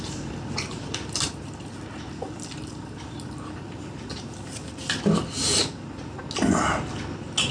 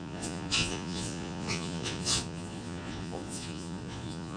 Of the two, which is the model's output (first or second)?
second